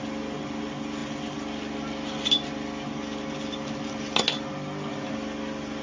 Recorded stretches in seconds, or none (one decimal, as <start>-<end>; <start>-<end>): 0.0-5.8